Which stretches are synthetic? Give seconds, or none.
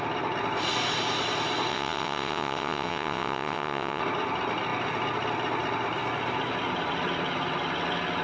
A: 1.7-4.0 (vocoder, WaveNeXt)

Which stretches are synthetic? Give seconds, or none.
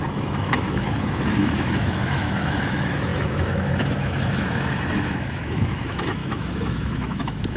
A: 0.0-7.6 (autoencoder, DAC-VAE)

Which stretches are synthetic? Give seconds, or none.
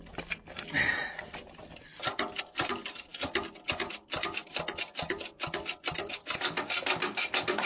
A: none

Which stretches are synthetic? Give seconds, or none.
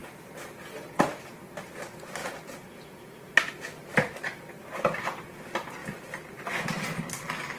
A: 2.2-3.3 (vocoder, Vocos)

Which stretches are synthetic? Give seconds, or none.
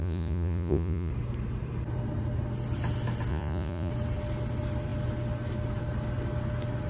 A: 0.0-1.1 (vocoder, Vocos); 3.3-3.9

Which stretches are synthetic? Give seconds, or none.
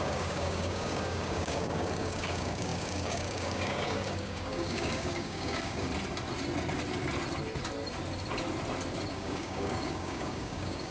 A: 0.0-5.9 (codec, DAC); 9.1-10.9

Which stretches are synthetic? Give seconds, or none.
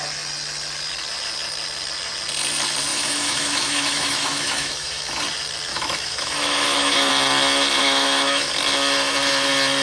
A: 2.9-5.2 (autoencoder, DAC-VAE); 5.7-7.1; 7.8-8.5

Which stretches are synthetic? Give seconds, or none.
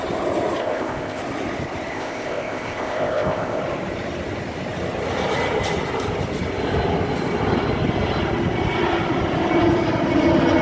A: 0.6-1.2 (codec, ZipCodec); 1.9-3.6